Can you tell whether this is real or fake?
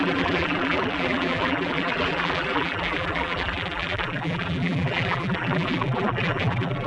fake